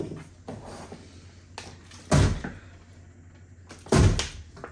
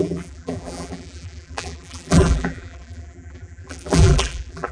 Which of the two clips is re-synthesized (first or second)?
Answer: second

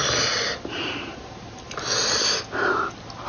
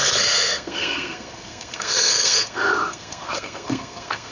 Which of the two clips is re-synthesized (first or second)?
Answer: second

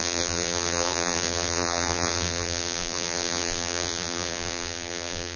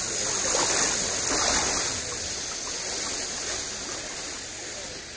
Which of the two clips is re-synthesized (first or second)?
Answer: first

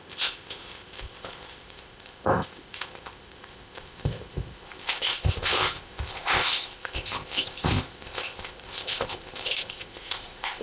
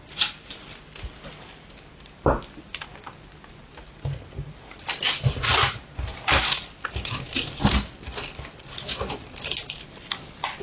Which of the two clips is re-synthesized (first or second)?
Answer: first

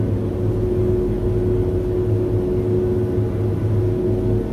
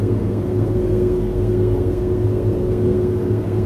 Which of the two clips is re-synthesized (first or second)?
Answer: second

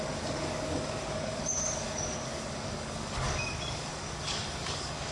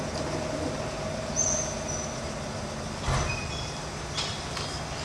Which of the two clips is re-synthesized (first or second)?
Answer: first